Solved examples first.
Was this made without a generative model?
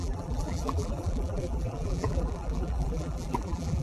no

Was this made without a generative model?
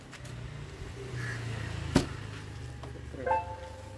yes